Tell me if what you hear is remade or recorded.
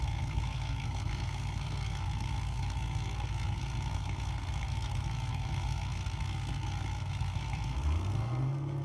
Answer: remade